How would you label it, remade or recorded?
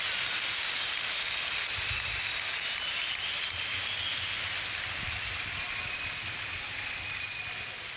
recorded